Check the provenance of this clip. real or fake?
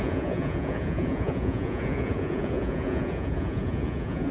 fake